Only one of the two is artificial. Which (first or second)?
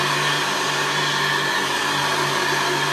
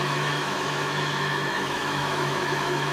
second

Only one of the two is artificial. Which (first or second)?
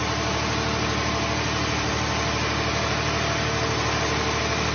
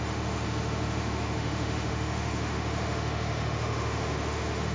second